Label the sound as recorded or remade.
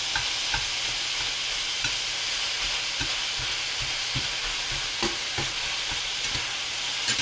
recorded